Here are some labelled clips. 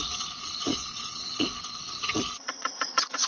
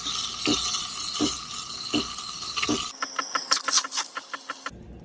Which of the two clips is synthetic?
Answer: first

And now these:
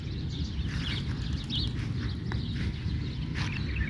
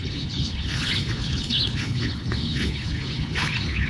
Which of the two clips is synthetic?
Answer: second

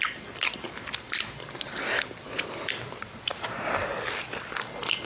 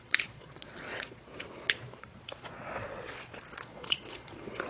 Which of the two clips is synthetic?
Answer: second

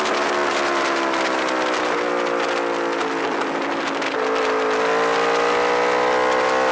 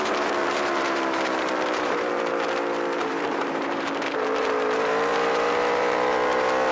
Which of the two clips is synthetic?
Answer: second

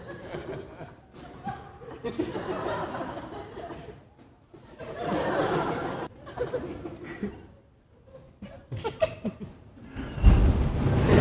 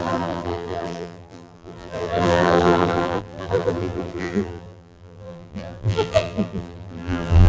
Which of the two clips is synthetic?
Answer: second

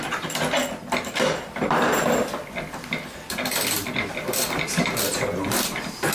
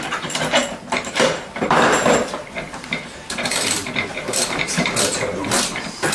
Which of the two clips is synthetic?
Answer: second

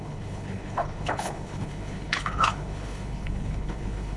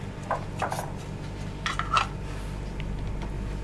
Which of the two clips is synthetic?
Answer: first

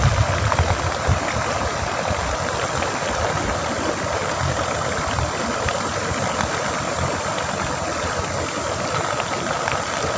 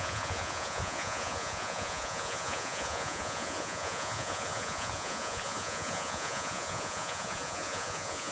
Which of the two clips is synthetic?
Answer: second